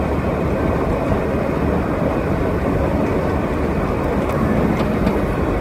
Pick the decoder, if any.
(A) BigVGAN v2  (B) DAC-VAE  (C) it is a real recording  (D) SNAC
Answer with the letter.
C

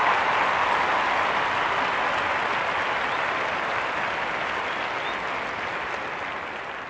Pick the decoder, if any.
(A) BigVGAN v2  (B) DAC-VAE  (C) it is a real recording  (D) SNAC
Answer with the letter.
C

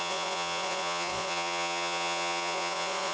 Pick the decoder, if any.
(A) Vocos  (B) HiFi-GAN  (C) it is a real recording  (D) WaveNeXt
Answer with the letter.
A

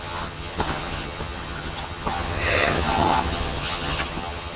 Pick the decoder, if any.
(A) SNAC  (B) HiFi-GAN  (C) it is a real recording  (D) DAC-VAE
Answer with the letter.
B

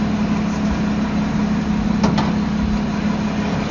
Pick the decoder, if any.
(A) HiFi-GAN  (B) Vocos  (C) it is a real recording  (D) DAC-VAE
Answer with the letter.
C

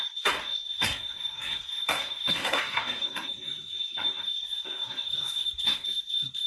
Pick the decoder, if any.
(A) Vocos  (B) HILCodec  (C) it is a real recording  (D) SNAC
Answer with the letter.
D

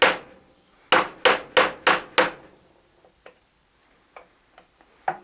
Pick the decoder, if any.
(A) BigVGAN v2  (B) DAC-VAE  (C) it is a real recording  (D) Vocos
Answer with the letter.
C